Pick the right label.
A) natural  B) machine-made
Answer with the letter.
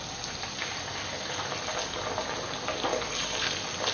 A